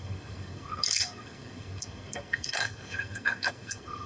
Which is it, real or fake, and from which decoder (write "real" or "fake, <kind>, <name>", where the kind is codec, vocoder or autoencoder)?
fake, codec, SNAC